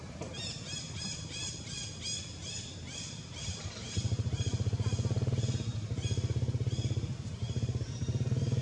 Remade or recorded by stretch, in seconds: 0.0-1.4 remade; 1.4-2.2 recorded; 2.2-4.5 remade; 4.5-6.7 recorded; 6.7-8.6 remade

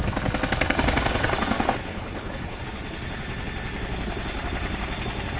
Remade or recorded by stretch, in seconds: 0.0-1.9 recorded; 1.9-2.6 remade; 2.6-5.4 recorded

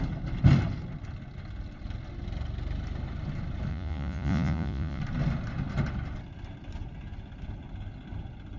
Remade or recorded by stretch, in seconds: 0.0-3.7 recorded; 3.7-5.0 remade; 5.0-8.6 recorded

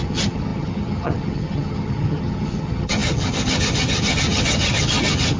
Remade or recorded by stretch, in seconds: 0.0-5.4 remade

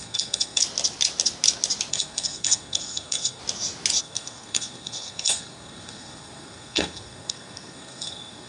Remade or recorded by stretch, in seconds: 0.0-0.6 remade; 0.6-1.9 recorded; 1.9-3.4 remade; 3.4-4.0 recorded; 4.0-8.5 remade

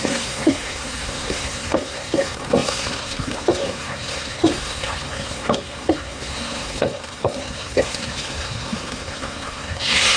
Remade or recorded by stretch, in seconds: 0.0-10.2 remade